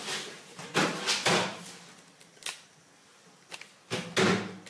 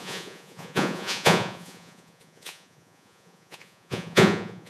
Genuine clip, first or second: first